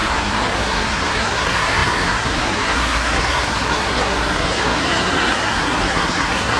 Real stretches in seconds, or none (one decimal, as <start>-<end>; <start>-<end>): none